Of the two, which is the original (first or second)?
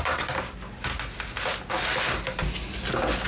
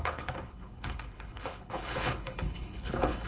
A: first